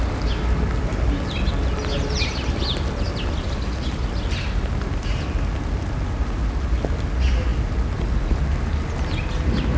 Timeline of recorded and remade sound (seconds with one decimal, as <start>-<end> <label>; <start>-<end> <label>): 0.0-9.8 recorded